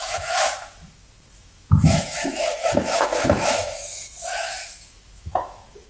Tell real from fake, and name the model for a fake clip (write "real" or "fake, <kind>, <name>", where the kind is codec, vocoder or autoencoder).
fake, autoencoder, DAC-VAE